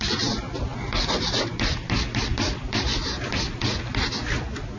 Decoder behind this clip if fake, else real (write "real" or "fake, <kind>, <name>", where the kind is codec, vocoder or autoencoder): real